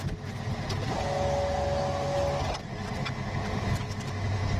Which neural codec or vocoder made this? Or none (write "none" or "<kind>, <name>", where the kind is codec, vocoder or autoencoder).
none